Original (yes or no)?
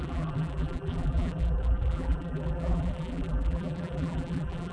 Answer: no